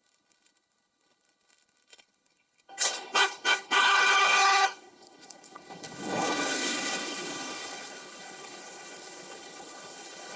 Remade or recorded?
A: remade